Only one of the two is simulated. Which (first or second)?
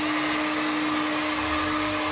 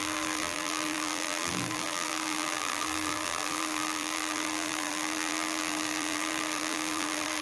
second